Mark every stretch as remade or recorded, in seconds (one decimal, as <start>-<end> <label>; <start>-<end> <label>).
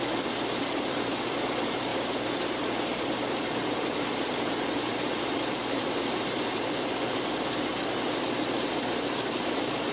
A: 0.0-1.9 remade; 1.9-3.0 recorded; 3.0-9.9 remade